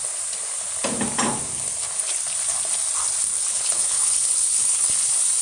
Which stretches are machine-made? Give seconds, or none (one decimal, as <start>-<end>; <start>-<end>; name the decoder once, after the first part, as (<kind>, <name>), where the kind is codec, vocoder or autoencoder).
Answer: 3.3-4.9 (codec, HILCodec)